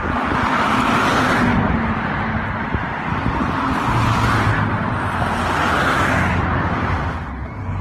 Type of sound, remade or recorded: recorded